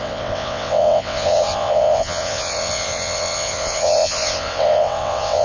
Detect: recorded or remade remade